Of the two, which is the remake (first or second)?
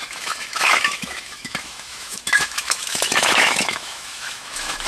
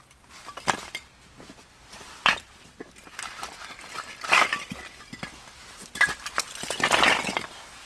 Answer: first